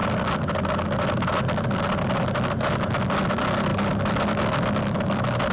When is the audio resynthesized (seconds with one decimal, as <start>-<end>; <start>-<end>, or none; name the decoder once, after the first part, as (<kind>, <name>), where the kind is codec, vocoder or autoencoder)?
none